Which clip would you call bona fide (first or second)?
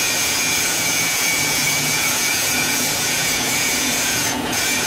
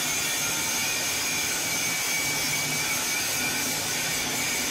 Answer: second